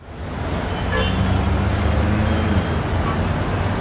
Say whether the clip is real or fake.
real